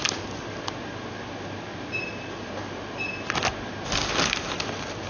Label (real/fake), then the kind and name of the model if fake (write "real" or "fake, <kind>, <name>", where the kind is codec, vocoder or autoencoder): real